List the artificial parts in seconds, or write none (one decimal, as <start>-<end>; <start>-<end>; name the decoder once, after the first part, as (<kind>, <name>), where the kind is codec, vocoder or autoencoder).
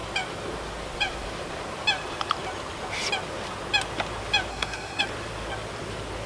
4.5-5.0 (codec, SNAC)